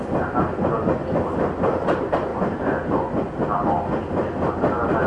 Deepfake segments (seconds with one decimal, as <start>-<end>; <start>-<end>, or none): none